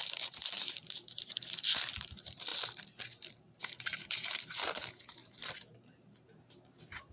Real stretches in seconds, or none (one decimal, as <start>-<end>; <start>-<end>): 2.5-3.3; 5.2-7.1